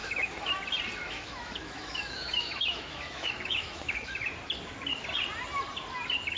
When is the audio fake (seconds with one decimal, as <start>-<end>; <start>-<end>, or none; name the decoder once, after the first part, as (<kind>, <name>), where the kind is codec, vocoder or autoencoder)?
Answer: 0.0-0.6 (autoencoder, DAC-VAE); 1.0-4.2